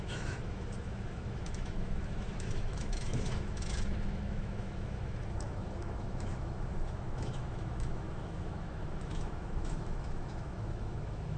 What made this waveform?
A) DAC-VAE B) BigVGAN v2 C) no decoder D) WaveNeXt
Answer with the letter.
A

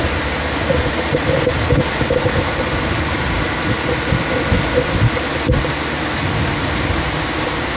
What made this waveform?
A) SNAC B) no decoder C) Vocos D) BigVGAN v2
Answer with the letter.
B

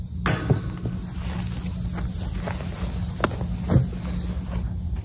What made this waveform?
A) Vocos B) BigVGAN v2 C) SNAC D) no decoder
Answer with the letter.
D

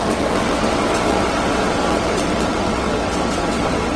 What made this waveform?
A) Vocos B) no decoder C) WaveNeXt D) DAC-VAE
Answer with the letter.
C